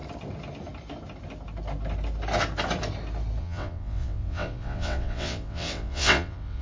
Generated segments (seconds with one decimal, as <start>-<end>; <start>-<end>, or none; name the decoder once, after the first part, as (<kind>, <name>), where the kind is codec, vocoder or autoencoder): 3.4-6.6 (vocoder, WaveNeXt)